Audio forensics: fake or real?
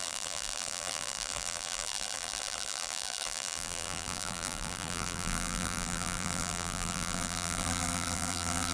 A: fake